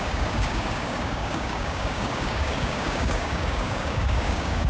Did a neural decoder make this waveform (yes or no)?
yes